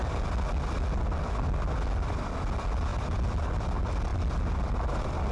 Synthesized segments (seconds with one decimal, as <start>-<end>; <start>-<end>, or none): 2.9-3.6; 4.1-5.3